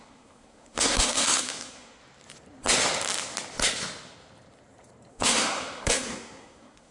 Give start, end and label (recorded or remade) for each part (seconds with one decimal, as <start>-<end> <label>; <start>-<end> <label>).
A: 0.0-2.0 remade; 2.0-5.1 recorded; 5.1-6.9 remade